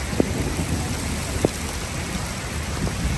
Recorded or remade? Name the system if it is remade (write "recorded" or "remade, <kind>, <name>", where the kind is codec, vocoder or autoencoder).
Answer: recorded